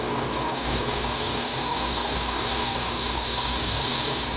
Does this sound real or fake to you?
fake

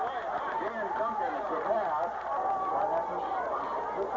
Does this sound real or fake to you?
real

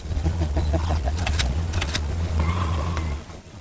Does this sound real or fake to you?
fake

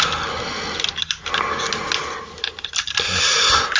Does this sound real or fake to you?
real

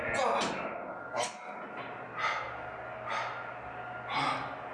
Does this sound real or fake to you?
real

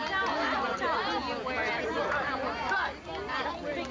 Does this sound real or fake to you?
real